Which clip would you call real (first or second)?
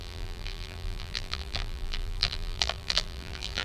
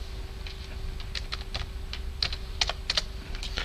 second